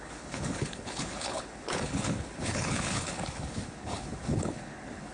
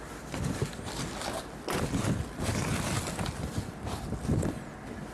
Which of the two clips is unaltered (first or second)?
second